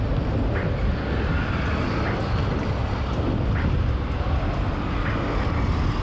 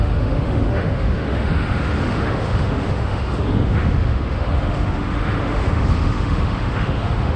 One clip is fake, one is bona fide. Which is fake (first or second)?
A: second